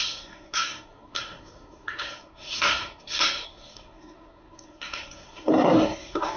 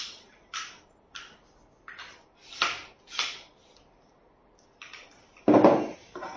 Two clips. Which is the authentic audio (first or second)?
second